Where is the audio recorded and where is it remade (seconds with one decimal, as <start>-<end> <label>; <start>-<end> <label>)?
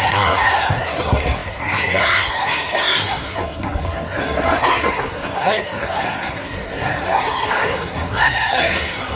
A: 0.0-9.2 remade